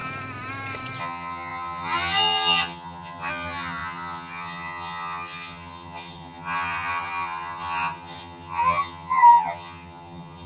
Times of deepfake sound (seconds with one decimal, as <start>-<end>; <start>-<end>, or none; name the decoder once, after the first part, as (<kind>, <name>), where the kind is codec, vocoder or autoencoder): 1.0-10.5 (vocoder, HiFi-GAN)